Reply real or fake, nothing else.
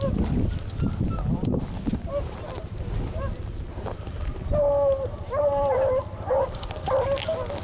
real